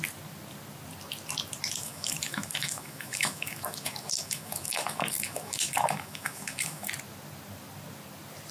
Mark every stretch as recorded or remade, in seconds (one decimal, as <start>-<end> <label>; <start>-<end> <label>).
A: 0.0-1.8 recorded; 1.8-6.9 remade; 6.9-8.5 recorded